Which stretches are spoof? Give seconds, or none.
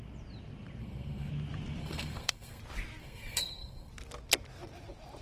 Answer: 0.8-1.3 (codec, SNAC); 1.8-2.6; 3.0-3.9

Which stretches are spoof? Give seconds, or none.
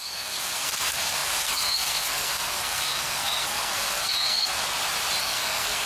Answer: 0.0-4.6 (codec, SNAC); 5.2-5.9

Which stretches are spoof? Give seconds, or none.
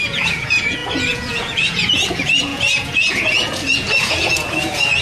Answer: 0.0-5.0 (vocoder, Vocos)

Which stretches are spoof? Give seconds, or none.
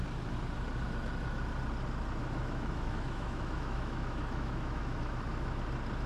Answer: 2.2-5.6 (autoencoder, DAC-VAE)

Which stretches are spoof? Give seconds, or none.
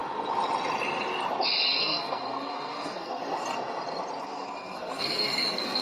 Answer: 1.8-3.2 (codec, SNAC); 4.2-5.8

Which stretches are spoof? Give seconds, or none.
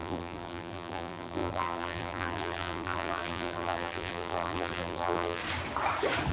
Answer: 0.0-5.4 (vocoder, BigVGAN v2)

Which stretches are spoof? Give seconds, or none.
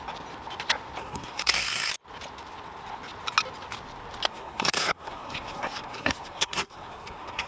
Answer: 1.0-1.9 (codec, SNAC); 4.3-7.5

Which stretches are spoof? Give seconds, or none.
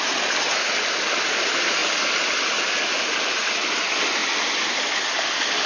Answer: none